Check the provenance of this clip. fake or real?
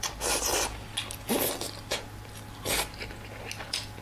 real